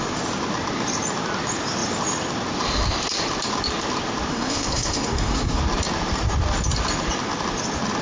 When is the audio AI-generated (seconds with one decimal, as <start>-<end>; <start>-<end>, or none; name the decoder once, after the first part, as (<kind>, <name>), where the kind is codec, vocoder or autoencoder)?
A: 4.3-5.6 (codec, SNAC)